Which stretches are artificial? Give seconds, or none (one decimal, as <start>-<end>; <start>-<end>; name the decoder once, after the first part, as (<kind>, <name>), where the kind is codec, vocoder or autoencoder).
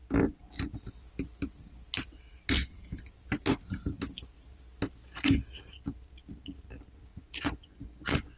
7.1-8.4 (vocoder, Vocos)